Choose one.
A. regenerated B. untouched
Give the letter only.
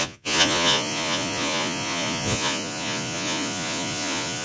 A